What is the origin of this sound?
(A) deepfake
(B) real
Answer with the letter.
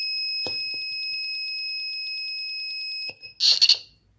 B